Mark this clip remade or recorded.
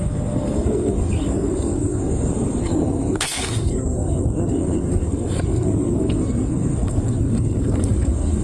remade